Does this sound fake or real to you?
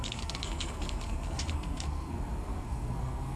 fake